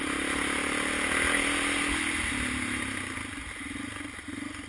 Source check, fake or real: real